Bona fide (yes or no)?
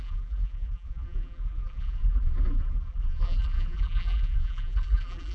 no